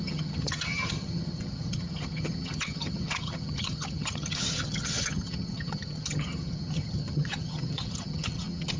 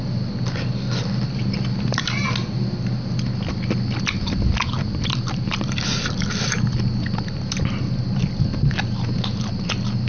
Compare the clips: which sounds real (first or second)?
second